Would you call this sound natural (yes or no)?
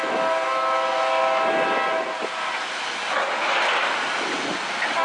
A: yes